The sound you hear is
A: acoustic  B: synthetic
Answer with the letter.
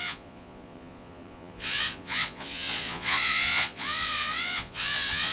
B